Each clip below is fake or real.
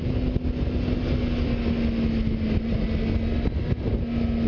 real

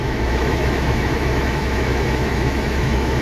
fake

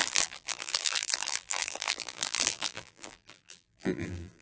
fake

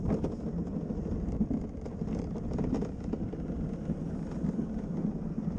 real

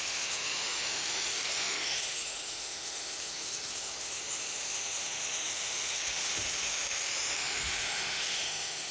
fake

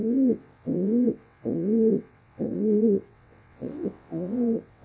fake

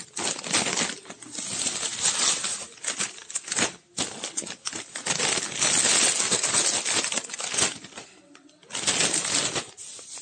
real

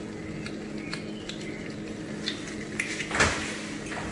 real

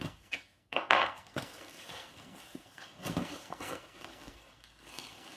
fake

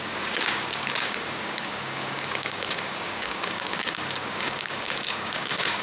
fake